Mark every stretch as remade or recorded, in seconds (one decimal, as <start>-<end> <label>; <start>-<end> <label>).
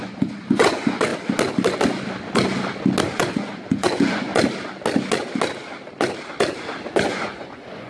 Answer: 0.0-1.1 remade; 1.1-3.0 recorded; 3.0-4.3 remade; 4.3-7.1 recorded; 7.1-7.9 remade